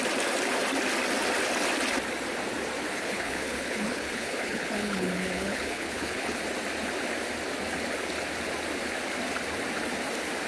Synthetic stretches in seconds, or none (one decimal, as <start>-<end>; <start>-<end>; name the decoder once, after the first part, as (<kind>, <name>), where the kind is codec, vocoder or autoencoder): 2.9-6.4 (codec, HILCodec)